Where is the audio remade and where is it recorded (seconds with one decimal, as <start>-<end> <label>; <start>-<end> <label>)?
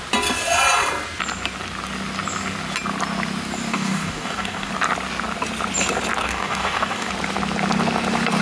0.0-3.7 recorded; 3.7-4.7 remade; 4.7-6.2 recorded; 6.2-7.1 remade; 7.1-8.4 recorded